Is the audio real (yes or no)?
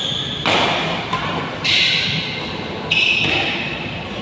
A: yes